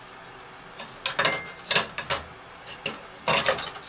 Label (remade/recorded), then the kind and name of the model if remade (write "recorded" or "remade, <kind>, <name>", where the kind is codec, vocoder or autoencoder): recorded